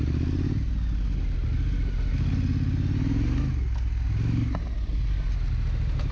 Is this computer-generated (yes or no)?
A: no